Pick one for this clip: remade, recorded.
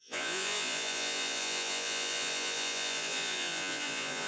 remade